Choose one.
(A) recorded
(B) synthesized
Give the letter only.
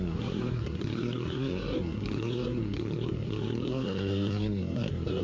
B